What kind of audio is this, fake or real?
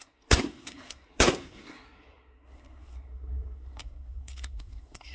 fake